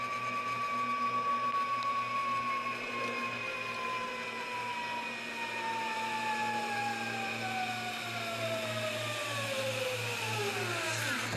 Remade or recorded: recorded